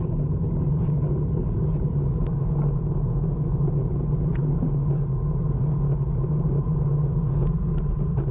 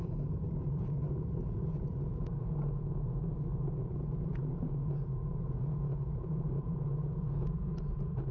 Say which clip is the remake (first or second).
second